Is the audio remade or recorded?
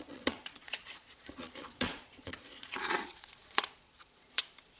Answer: remade